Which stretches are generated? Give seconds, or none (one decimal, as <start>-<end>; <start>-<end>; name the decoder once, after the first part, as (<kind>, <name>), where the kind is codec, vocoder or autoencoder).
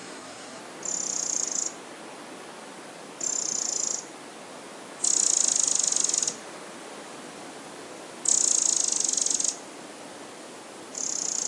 0.0-0.6 (codec, SNAC)